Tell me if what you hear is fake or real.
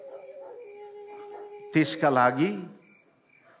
real